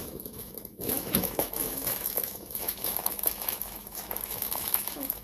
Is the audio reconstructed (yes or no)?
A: yes